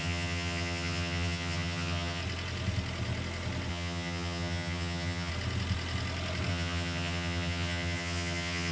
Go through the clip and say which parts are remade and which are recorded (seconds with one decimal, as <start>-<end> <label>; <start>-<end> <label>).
0.0-2.2 remade; 2.2-3.7 recorded; 3.7-5.3 remade; 5.3-6.5 recorded; 6.5-8.7 remade